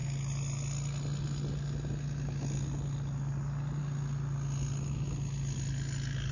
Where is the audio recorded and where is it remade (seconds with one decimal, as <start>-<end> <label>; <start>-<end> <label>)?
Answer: 0.0-6.3 recorded